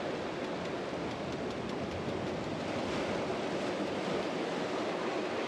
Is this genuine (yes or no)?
yes